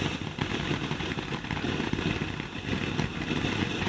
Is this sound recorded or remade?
recorded